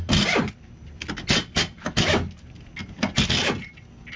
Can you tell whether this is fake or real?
real